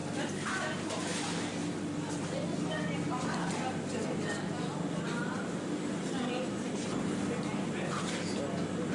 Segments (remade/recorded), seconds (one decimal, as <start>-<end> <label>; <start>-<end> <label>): 0.0-8.9 recorded